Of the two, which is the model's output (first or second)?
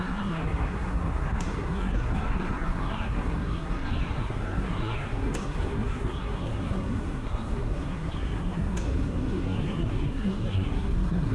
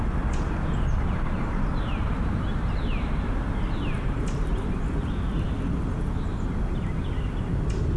first